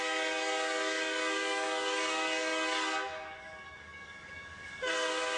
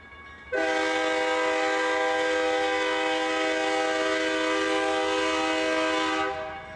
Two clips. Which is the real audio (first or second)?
second